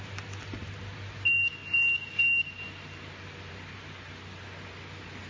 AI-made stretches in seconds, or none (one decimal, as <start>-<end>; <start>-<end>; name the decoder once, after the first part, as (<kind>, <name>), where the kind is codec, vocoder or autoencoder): none